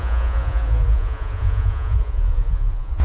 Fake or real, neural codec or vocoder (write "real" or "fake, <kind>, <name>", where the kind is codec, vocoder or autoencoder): fake, vocoder, Vocos